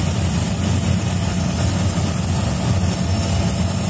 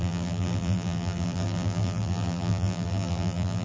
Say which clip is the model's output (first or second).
second